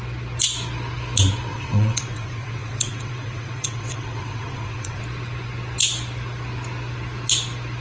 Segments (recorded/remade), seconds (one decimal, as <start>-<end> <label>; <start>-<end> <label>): 0.0-1.5 recorded; 1.5-5.0 remade; 5.0-7.8 recorded